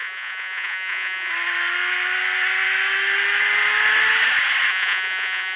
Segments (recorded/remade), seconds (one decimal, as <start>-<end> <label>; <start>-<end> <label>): 0.0-1.3 remade; 1.3-4.7 recorded; 4.7-5.6 remade